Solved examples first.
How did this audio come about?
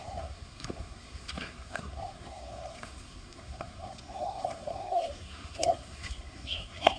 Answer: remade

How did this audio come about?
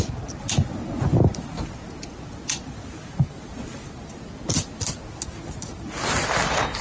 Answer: recorded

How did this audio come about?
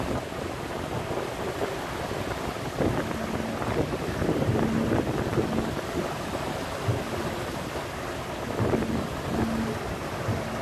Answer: recorded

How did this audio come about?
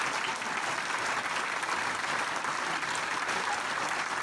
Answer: recorded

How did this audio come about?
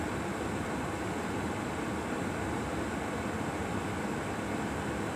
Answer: recorded